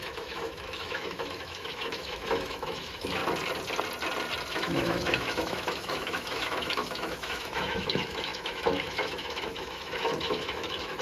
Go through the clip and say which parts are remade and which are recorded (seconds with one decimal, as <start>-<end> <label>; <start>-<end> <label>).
0.0-3.2 remade; 3.2-4.5 recorded; 4.5-11.0 remade